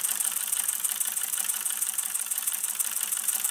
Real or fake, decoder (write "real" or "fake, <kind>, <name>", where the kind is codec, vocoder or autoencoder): fake, vocoder, BigVGAN v2